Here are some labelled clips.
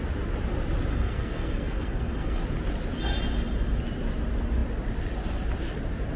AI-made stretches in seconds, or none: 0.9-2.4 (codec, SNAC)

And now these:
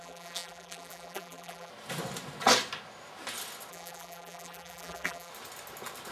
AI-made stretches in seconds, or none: 0.0-1.7 (vocoder, BigVGAN v2); 3.7-5.3

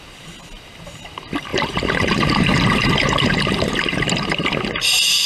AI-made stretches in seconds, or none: 1.5-4.7 (vocoder, BigVGAN v2)

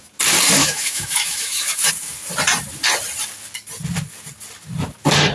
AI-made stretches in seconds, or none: 0.6-1.9 (autoencoder, DAC-VAE)